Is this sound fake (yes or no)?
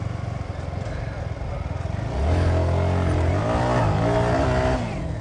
no